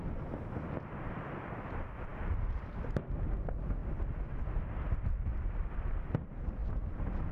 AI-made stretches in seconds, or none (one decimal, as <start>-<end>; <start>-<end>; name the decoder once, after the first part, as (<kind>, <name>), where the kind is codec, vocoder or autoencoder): 0.0-3.8 (vocoder, BigVGAN v2); 4.4-6.6